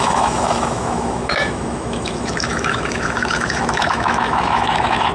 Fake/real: fake